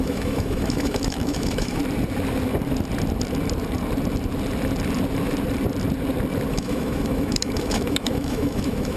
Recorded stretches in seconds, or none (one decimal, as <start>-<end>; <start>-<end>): 1.8-6.5